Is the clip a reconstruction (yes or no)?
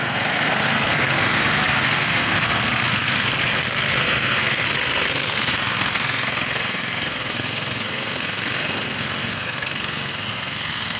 yes